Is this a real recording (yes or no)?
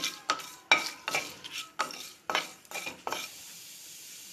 yes